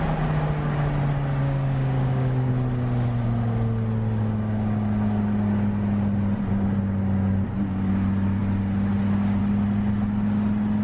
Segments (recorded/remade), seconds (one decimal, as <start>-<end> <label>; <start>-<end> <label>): 0.0-1.4 recorded; 1.4-2.5 remade; 2.5-10.8 recorded